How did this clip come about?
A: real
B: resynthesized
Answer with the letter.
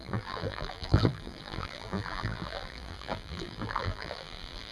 B